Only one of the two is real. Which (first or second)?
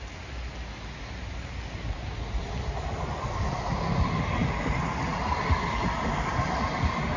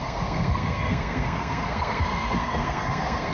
first